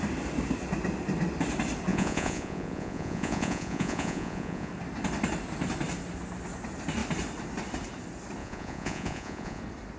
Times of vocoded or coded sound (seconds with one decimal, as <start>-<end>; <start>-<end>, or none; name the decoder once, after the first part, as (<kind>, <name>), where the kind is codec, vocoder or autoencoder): 1.9-4.7 (vocoder, Vocos); 8.4-9.6